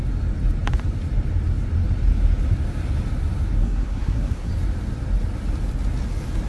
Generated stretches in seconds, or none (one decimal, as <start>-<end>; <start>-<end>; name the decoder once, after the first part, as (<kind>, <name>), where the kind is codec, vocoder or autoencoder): 3.6-4.5 (codec, SNAC)